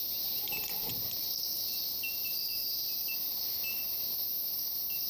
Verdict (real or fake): real